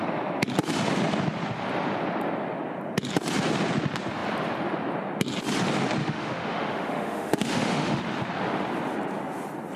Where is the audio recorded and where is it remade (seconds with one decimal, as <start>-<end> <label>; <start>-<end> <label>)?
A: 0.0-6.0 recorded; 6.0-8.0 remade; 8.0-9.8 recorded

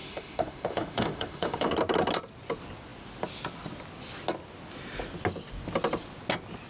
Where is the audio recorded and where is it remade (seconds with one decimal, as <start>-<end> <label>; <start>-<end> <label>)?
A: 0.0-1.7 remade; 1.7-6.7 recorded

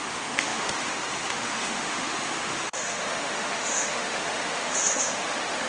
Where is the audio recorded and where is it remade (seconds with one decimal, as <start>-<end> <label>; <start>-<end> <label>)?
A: 0.0-5.7 remade

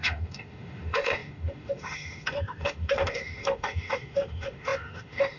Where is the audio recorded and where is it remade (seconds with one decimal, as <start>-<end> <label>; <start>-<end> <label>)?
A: 0.0-5.4 remade

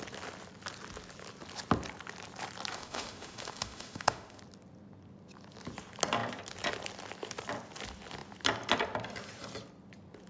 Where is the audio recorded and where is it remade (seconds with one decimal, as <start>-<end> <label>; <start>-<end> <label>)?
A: 0.0-2.7 recorded; 2.7-4.4 remade; 4.4-10.3 recorded

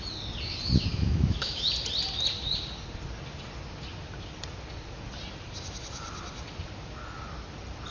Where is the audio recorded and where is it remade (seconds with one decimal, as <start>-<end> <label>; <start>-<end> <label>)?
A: 0.0-0.9 recorded; 0.9-1.7 remade; 1.7-7.9 recorded

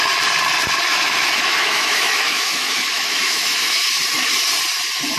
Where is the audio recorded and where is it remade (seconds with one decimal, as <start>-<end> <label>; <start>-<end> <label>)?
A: 0.0-0.9 recorded; 0.9-4.0 remade; 4.0-5.2 recorded

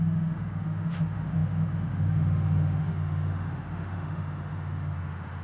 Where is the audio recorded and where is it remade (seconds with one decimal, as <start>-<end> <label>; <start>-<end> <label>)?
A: 0.0-5.4 remade